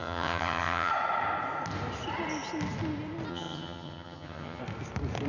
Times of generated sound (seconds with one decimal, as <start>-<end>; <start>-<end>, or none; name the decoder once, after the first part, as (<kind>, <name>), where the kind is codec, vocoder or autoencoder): 0.0-0.9 (vocoder, HiFi-GAN); 3.3-4.6